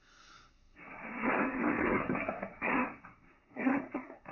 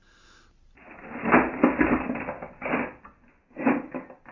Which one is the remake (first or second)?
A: first